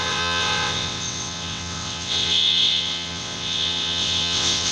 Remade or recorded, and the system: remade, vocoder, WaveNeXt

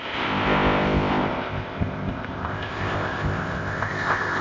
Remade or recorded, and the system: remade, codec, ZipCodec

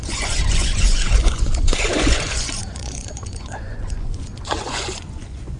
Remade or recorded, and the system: remade, vocoder, Vocos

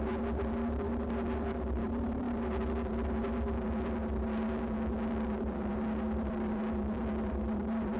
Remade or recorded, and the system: remade, vocoder, BigVGAN v2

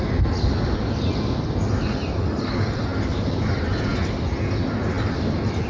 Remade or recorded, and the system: recorded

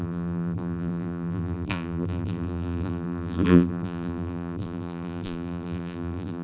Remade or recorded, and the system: remade, vocoder, BigVGAN v2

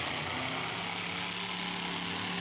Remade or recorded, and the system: recorded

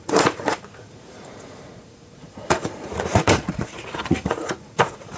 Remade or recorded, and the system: remade, vocoder, Vocos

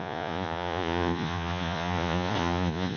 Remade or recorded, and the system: remade, vocoder, Vocos